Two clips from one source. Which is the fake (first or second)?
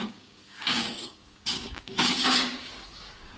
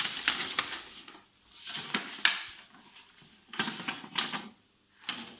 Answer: first